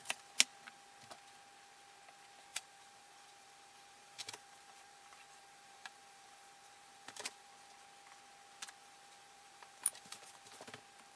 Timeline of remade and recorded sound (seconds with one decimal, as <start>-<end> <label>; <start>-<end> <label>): 0.0-2.5 recorded; 2.5-7.5 remade; 7.5-8.8 recorded; 8.8-10.6 remade; 10.6-11.2 recorded